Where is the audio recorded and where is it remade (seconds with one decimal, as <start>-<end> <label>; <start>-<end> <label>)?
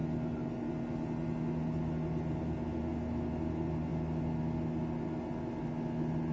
0.0-6.3 recorded